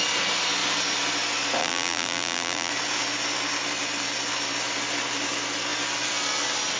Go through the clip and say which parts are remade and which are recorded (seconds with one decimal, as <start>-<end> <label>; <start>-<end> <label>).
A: 0.0-1.6 recorded; 1.6-2.7 remade; 2.7-6.8 recorded